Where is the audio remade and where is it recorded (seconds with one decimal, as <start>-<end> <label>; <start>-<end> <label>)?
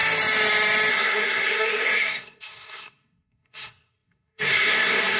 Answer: 0.0-0.9 recorded; 0.9-5.2 remade